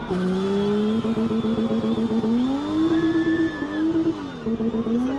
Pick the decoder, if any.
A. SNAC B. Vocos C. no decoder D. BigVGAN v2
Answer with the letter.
C